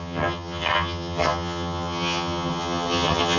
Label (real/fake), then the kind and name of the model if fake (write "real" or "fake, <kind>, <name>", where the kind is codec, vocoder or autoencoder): fake, vocoder, HiFi-GAN